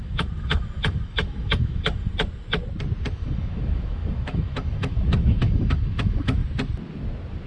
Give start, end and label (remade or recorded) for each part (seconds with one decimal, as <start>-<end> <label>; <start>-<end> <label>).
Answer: 0.0-2.1 remade; 2.1-3.1 recorded; 3.1-6.4 remade; 6.4-7.5 recorded